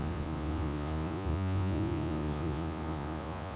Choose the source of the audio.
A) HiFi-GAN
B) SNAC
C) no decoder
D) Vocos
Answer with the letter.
D